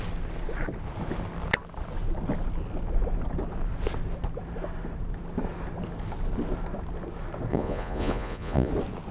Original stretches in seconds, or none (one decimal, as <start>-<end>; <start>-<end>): 0.0-7.5; 8.7-9.1